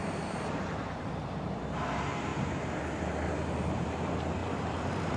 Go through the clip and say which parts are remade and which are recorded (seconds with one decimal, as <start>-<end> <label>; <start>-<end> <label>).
0.0-2.3 remade; 2.3-3.7 recorded; 3.7-5.2 remade